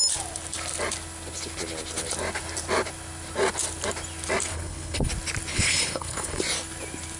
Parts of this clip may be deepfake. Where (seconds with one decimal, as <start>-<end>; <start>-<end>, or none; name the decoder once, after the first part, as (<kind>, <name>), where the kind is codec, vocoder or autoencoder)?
4.5-5.1 (codec, HILCodec); 5.5-6.4